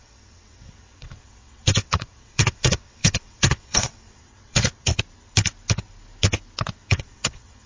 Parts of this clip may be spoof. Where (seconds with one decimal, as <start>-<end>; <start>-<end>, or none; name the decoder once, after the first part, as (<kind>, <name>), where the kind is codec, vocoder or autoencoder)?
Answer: 0.0-4.9 (vocoder, WaveNeXt); 6.9-7.7

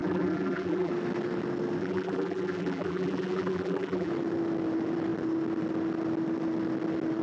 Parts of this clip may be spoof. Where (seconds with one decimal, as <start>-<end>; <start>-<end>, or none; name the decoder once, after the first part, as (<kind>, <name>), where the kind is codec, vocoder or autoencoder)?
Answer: 0.0-0.9 (vocoder, BigVGAN v2); 1.8-4.1

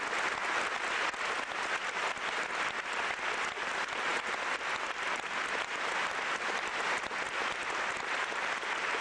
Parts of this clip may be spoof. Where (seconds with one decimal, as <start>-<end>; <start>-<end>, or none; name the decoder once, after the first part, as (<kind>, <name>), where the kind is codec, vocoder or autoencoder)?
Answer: none

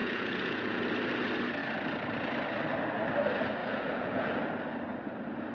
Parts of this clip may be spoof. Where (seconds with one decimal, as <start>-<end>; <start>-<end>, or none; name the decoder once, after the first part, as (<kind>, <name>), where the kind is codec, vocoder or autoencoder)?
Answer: 0.0-0.8 (vocoder, Vocos); 3.6-4.4

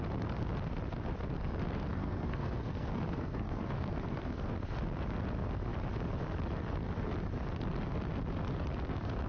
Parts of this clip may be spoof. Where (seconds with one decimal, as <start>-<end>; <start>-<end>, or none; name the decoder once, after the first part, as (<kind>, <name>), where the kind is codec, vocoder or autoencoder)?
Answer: 1.9-4.5 (codec, SNAC)

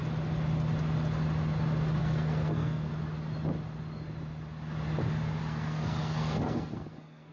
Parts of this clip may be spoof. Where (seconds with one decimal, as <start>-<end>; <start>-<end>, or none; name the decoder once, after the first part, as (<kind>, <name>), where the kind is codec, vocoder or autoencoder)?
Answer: 2.0-2.9 (codec, SNAC); 5.4-7.3

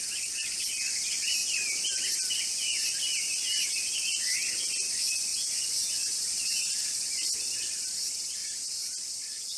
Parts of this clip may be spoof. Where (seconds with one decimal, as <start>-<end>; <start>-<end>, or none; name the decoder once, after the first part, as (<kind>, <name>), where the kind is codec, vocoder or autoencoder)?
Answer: 5.3-6.3 (vocoder, Vocos)